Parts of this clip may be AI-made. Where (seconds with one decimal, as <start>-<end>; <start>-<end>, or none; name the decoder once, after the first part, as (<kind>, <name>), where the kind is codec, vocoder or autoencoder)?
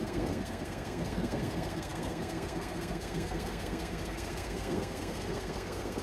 0.0-6.0 (codec, SNAC)